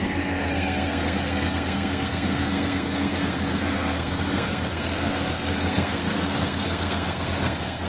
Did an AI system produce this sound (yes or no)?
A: yes